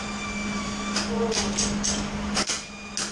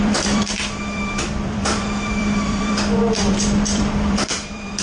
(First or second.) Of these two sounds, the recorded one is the first